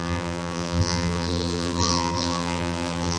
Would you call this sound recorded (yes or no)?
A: no